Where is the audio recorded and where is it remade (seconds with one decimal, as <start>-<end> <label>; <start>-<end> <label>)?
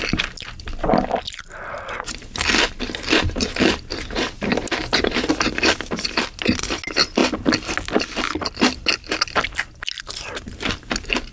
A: 0.0-3.9 recorded; 3.9-5.3 remade; 5.3-11.3 recorded